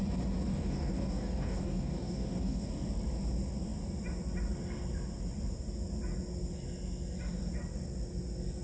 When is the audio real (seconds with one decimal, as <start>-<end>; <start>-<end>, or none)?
0.0-0.5; 2.7-8.6